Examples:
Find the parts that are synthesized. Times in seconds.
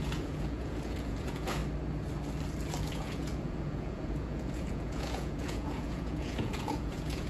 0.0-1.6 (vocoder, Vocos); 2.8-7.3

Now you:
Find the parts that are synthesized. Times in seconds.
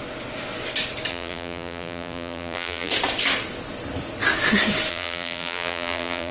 1.1-2.9 (vocoder, BigVGAN v2); 4.9-6.3